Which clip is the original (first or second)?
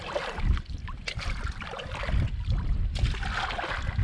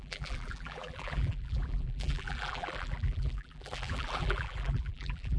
first